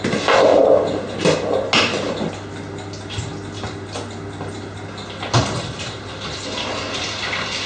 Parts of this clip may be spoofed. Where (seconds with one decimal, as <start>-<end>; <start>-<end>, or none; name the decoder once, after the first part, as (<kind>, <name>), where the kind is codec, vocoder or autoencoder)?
none